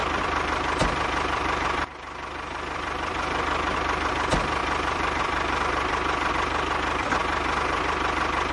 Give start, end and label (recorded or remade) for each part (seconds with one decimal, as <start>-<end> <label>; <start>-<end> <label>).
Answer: 0.0-4.1 remade; 4.1-4.6 recorded; 4.6-6.3 remade; 6.3-8.5 recorded